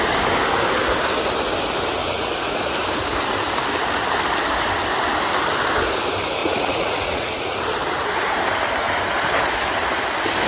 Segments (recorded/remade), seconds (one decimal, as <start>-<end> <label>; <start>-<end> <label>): 0.0-2.0 recorded; 2.0-2.6 remade; 2.6-6.4 recorded; 6.4-7.6 remade; 7.6-10.5 recorded